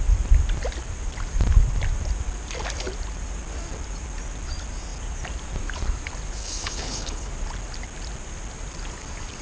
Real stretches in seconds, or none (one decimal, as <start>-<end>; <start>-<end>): 0.0-6.4; 7.3-9.4